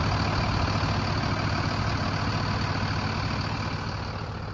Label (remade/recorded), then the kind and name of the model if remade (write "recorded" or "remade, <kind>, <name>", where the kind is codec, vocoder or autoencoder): recorded